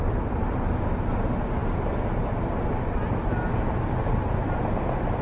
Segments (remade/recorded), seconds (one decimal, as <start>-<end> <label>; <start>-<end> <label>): 0.0-5.2 recorded

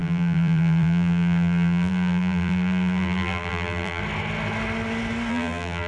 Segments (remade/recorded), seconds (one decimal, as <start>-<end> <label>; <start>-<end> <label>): 0.0-4.0 remade; 4.0-5.3 recorded; 5.3-5.9 remade

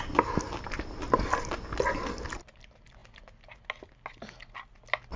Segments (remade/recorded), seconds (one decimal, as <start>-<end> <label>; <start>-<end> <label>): 0.0-5.2 recorded

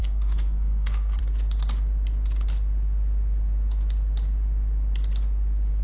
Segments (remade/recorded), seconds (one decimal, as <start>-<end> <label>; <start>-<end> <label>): 0.0-1.2 remade; 1.2-5.8 recorded

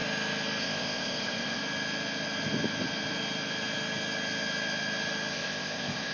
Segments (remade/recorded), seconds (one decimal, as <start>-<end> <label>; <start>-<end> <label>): 0.0-0.6 recorded; 0.6-1.6 remade; 1.6-5.3 recorded; 5.3-6.1 remade

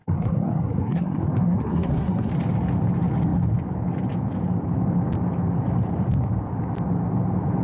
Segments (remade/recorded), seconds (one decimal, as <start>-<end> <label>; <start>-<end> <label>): 0.0-2.3 remade; 2.3-7.6 recorded

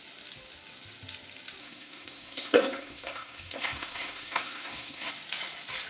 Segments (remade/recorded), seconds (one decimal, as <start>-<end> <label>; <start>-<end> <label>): 0.0-1.6 recorded; 1.6-5.1 remade; 5.1-5.9 recorded

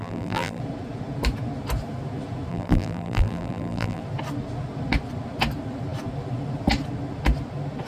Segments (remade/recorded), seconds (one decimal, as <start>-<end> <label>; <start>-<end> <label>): 0.0-0.6 remade; 0.6-2.5 recorded; 2.5-4.0 remade; 4.0-7.9 recorded